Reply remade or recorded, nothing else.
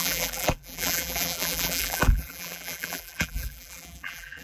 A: remade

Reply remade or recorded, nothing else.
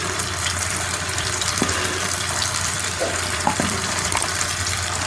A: remade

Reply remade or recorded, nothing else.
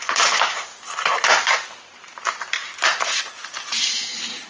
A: remade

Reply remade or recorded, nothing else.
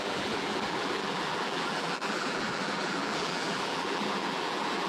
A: remade